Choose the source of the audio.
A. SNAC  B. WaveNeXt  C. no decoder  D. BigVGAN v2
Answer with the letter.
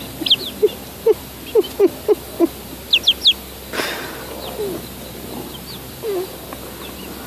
C